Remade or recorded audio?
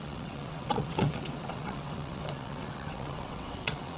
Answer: remade